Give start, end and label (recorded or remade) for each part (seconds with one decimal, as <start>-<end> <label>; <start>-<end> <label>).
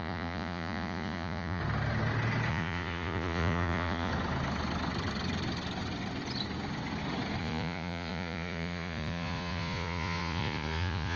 0.0-1.6 remade; 1.6-2.5 recorded; 2.5-4.1 remade; 4.1-7.4 recorded; 7.4-11.2 remade